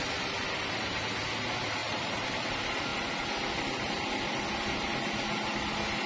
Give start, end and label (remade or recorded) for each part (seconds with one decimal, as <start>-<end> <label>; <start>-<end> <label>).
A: 0.0-1.8 recorded; 1.8-2.3 remade; 2.3-6.1 recorded